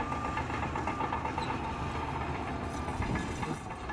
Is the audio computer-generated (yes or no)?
no